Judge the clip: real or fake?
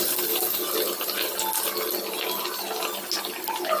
real